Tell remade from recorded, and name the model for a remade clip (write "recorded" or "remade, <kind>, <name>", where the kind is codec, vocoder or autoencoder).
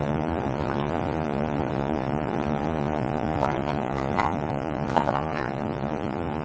remade, vocoder, Vocos